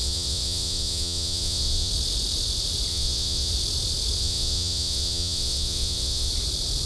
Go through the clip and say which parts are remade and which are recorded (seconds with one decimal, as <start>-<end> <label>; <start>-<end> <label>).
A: 0.0-1.9 remade; 1.9-2.9 recorded; 2.9-3.5 remade; 3.5-4.2 recorded; 4.2-6.3 remade; 6.3-6.9 recorded